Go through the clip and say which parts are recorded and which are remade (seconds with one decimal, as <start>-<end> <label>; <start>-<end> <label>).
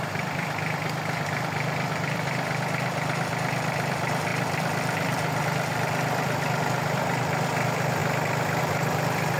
0.0-8.0 remade; 8.0-8.6 recorded; 8.6-9.4 remade